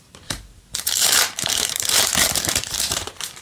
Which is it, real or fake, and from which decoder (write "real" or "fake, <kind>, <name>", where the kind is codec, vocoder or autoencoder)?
fake, vocoder, BigVGAN v2